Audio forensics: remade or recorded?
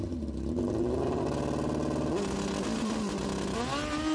recorded